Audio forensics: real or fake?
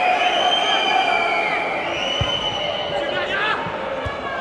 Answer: real